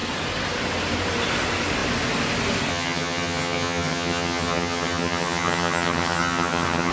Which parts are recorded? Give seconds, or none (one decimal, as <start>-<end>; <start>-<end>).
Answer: 0.0-2.7